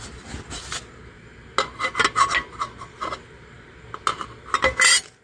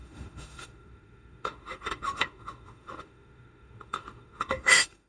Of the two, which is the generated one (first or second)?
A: second